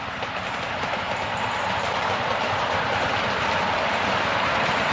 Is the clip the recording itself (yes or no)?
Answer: yes